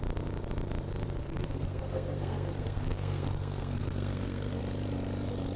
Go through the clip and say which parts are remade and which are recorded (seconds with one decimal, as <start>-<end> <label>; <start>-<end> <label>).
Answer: 0.0-1.2 recorded; 1.2-4.6 remade; 4.6-5.6 recorded